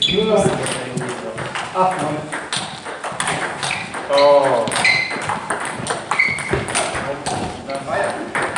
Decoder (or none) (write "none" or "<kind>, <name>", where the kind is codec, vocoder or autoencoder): none